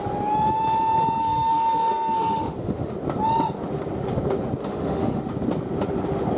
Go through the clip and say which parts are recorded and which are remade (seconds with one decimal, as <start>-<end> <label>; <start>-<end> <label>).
0.0-1.2 recorded; 1.2-2.9 remade; 2.9-4.6 recorded; 4.6-5.2 remade; 5.2-6.4 recorded